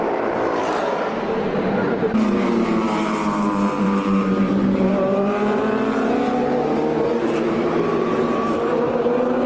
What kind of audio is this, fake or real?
fake